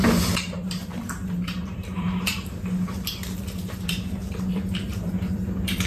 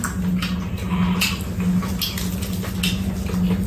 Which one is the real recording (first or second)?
second